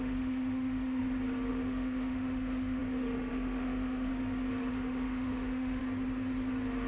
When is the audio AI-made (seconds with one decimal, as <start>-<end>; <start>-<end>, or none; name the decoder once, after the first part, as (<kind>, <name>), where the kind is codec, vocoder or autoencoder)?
0.0-1.0 (autoencoder, DAC-VAE); 1.5-4.1; 4.7-5.8

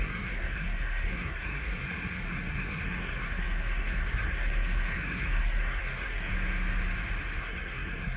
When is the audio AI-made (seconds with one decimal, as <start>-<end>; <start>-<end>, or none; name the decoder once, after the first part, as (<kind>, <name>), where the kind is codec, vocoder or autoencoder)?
0.0-6.3 (codec, SNAC); 7.4-8.2

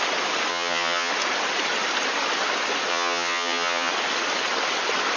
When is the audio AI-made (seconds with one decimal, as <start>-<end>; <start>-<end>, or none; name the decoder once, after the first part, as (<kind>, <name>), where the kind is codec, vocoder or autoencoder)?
0.5-1.1 (vocoder, HiFi-GAN); 2.9-3.9

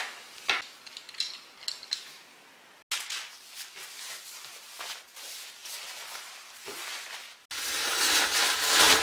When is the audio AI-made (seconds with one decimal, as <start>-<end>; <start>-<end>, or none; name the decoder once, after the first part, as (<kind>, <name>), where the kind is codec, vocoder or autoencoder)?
none